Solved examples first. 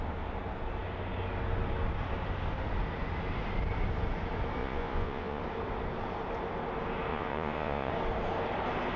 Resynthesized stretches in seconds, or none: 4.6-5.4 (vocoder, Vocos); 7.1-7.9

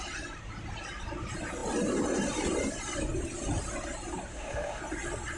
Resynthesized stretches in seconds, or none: 4.3-4.8 (autoencoder, DAC-VAE)